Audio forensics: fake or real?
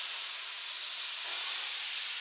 real